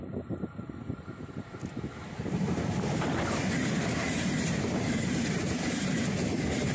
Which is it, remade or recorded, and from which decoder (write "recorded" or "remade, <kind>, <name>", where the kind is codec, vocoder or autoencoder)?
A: remade, vocoder, BigVGAN v2